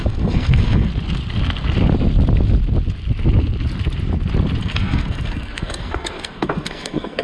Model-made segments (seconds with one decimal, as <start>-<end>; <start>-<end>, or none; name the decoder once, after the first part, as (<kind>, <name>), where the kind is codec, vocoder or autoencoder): 0.0-0.9 (codec, SNAC); 4.6-7.2